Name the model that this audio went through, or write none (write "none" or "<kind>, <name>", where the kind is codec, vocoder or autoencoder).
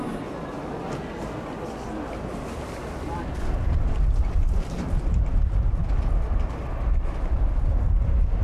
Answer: none